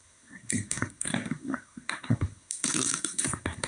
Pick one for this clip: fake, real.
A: fake